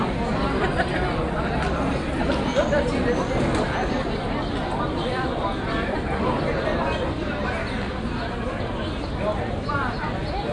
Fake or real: real